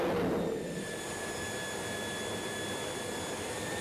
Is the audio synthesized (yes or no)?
no